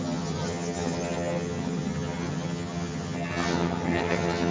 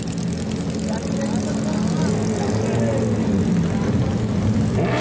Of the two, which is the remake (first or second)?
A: first